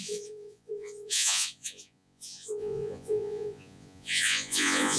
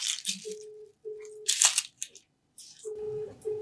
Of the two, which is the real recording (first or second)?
second